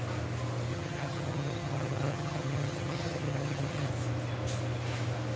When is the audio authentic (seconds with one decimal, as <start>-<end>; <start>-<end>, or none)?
0.0-0.7; 3.9-5.4